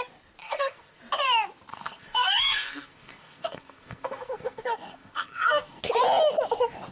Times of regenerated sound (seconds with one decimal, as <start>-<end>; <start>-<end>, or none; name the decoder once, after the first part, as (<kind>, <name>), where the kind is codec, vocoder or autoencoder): 0.4-1.0 (codec, SNAC); 1.7-5.8